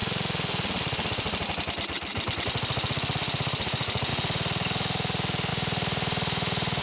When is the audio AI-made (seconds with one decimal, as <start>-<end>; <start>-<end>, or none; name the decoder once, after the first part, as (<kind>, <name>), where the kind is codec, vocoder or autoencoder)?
5.5-6.8 (vocoder, BigVGAN v2)